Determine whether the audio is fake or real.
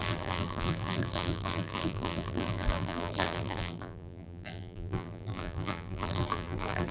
fake